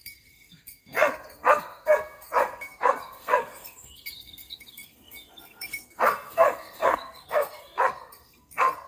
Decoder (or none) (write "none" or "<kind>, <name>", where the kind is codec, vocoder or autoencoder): codec, SNAC